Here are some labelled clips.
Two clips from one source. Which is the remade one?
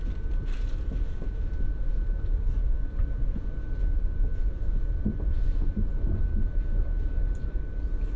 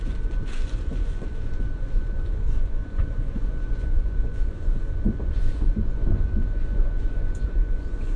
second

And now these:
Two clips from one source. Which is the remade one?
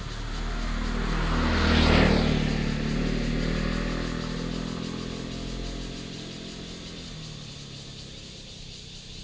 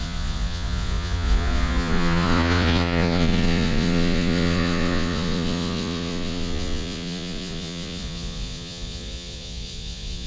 second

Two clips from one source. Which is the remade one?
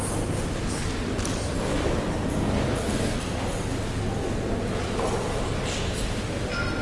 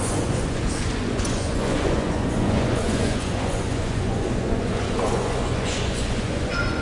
second